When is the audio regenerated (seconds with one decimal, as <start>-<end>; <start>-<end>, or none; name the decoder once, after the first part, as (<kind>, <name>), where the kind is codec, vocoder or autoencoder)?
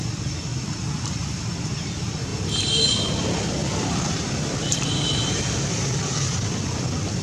0.0-0.5 (vocoder, BigVGAN v2); 1.0-7.2